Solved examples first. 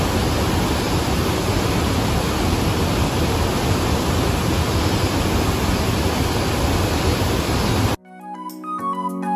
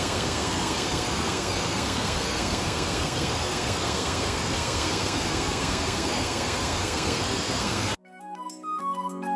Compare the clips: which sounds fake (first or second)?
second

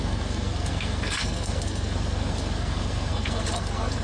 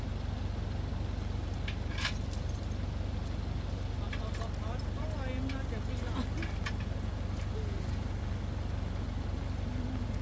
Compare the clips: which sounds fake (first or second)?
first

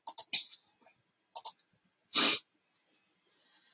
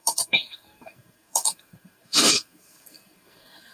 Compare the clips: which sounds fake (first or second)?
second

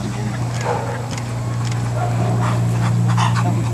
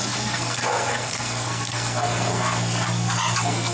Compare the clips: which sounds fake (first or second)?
second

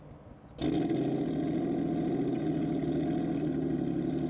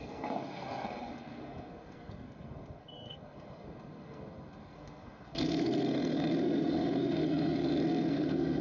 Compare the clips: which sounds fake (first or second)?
second